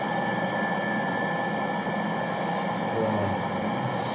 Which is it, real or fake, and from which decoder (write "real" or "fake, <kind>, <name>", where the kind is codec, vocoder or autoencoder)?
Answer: real